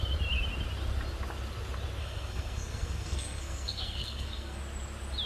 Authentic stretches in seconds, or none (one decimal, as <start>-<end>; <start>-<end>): 0.0-2.0; 4.6-5.3